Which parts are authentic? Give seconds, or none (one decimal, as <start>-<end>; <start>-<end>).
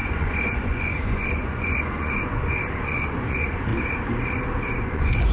3.7-4.6